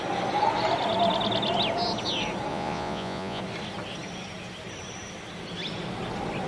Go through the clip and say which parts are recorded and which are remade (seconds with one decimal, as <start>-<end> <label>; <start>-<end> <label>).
0.0-2.5 recorded; 2.5-3.4 remade; 3.4-6.5 recorded